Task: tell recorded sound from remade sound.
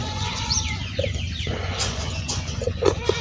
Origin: remade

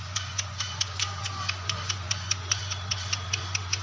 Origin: remade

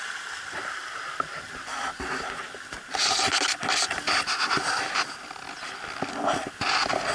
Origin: recorded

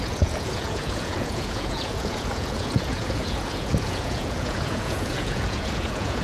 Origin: remade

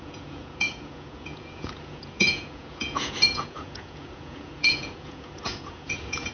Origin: remade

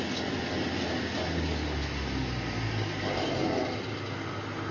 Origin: recorded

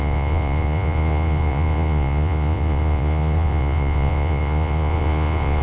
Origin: remade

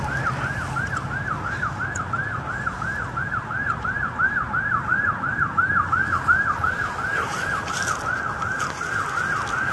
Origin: recorded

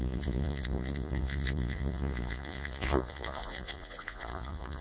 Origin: remade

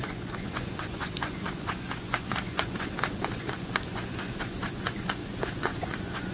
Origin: remade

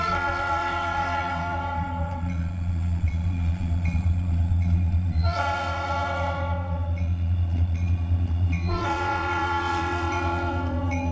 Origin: remade